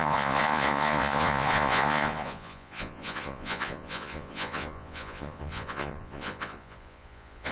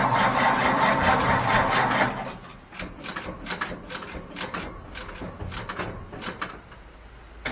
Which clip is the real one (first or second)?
second